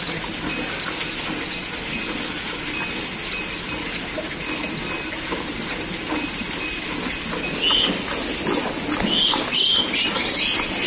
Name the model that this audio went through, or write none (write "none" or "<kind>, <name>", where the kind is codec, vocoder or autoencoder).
none